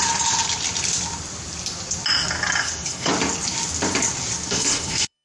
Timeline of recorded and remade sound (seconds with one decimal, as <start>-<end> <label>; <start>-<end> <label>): 0.0-2.6 recorded; 2.6-3.1 remade; 3.1-4.5 recorded; 4.5-5.2 remade